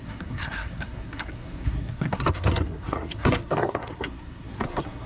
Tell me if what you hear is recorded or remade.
remade